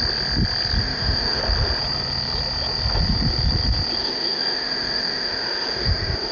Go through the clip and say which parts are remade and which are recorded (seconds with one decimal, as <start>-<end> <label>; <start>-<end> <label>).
0.0-0.8 recorded; 0.8-1.4 remade; 1.4-4.0 recorded; 4.0-6.3 remade